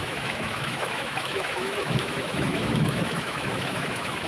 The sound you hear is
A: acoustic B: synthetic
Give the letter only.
B